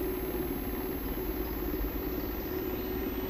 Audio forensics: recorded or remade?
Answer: recorded